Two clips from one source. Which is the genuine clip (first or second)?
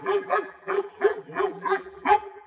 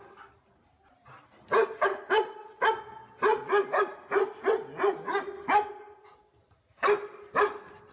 second